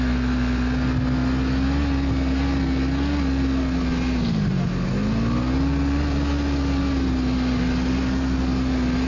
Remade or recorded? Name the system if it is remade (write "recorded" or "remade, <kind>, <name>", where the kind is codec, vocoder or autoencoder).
recorded